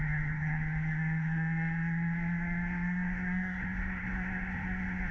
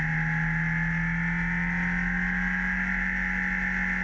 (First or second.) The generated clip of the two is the first